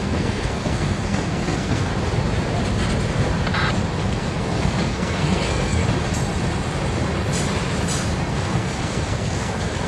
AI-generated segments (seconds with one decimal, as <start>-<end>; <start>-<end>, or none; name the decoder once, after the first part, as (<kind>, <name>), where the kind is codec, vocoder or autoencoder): 0.0-1.9 (codec, SNAC); 4.0-5.8; 8.3-9.9